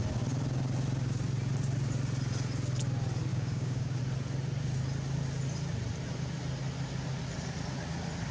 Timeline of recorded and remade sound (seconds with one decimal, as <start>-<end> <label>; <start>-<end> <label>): 0.0-3.3 recorded; 3.3-4.0 remade; 4.0-8.3 recorded